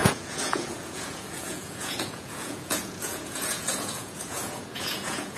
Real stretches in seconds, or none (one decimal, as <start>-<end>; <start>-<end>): none